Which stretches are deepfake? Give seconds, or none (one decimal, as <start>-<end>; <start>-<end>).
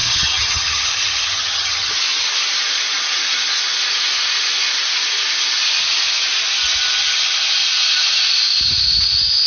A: 0.0-1.9